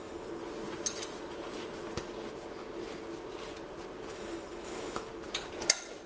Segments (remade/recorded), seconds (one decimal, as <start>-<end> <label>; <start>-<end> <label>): 0.0-0.4 remade; 0.4-4.1 recorded; 4.1-5.1 remade; 5.1-6.1 recorded